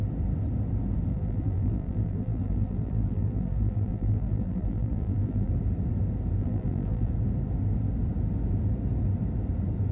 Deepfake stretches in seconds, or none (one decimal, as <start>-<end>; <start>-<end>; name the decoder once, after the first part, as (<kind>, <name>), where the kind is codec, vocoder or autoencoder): 1.1-5.5 (vocoder, BigVGAN v2); 6.4-7.1